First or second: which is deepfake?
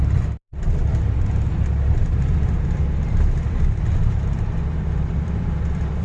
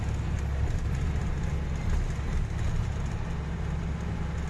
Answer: first